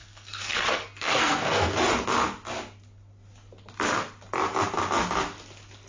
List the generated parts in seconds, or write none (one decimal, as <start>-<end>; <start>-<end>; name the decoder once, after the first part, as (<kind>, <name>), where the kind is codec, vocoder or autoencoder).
0.0-1.7 (codec, SNAC)